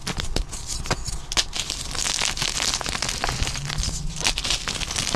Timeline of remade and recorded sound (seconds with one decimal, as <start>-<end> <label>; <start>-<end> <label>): 0.0-5.2 recorded